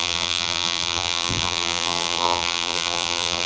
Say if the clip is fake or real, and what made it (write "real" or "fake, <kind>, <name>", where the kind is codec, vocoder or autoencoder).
fake, vocoder, BigVGAN v2